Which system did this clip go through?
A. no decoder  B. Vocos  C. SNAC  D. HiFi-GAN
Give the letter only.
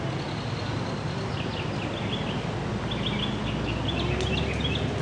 A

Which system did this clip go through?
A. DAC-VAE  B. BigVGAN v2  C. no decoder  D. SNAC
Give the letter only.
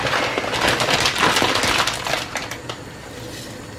C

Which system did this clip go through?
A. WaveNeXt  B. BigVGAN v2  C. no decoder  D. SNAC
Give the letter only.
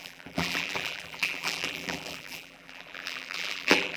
B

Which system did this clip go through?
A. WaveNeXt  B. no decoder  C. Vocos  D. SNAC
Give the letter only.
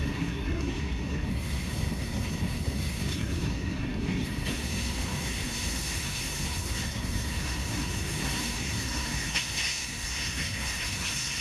D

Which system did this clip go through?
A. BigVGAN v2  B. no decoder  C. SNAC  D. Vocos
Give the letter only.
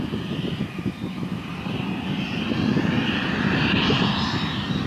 B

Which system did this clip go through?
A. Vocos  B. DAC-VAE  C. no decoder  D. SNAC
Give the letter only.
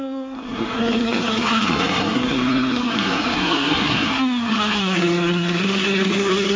D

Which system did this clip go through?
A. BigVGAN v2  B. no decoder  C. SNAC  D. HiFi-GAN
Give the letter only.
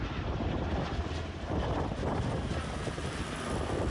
A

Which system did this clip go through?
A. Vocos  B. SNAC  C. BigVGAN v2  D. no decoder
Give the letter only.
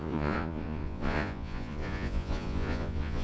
A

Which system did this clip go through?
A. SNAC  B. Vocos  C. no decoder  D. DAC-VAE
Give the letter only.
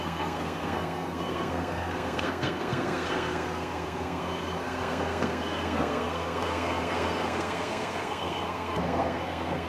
A